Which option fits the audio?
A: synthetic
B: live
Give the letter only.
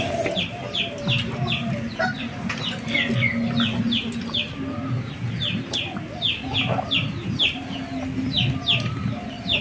B